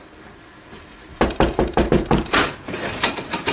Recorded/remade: remade